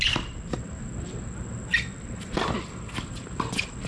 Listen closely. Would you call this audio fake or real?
real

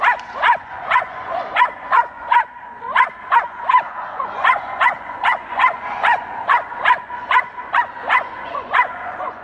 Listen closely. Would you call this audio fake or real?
fake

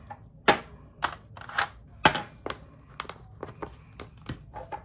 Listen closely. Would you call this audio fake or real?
real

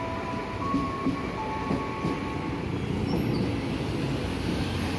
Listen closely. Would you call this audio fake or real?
real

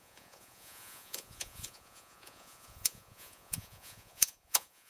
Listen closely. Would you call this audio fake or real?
fake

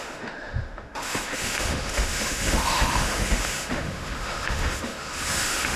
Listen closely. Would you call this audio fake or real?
fake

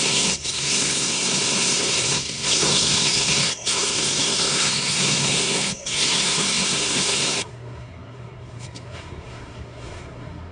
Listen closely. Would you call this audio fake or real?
fake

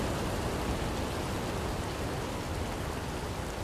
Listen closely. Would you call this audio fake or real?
real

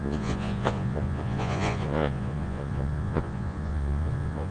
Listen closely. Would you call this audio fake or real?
fake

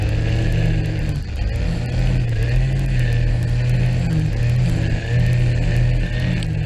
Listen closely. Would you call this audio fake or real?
real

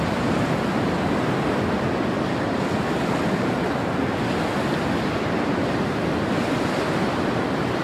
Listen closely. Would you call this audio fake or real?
real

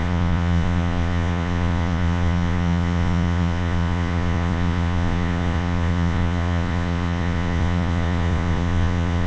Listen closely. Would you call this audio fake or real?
fake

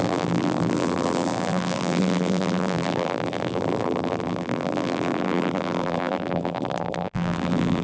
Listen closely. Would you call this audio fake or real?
fake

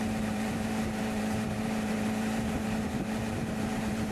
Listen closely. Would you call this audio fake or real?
fake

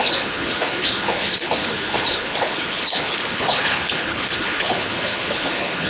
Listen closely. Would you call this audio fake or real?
fake